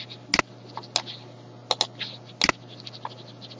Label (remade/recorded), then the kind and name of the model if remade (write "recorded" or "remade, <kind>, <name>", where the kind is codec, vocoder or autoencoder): recorded